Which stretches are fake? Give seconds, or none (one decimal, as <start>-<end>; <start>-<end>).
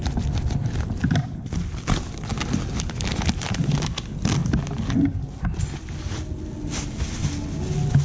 none